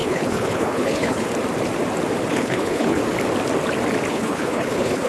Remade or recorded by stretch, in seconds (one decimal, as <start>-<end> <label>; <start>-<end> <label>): 0.0-1.3 remade; 1.3-2.3 recorded; 2.3-3.0 remade; 3.0-4.1 recorded; 4.1-5.1 remade